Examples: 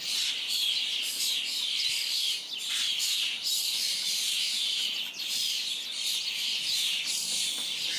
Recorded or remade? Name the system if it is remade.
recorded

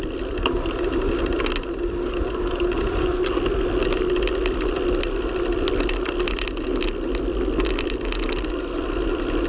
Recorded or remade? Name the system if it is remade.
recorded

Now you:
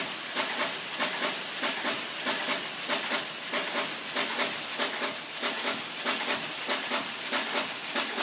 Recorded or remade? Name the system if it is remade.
recorded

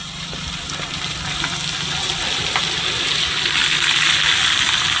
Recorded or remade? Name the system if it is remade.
recorded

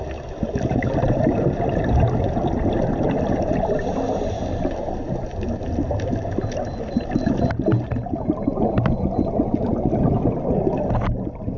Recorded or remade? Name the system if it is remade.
recorded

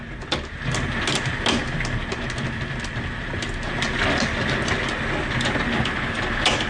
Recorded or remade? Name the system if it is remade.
recorded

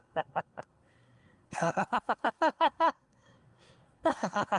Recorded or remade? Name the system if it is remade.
remade, codec, SNAC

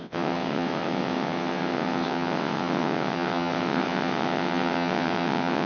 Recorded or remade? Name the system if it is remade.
remade, vocoder, WaveNeXt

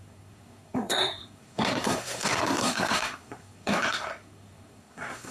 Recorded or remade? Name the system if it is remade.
remade, codec, SNAC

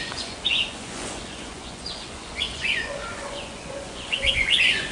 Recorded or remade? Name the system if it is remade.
remade, vocoder, Vocos